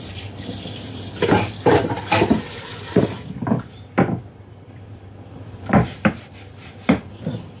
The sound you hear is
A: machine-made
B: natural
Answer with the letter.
A